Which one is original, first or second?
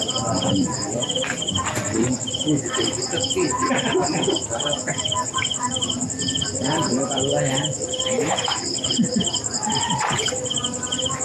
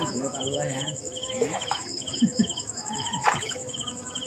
first